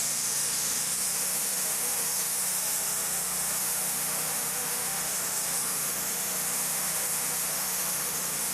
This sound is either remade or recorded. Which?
remade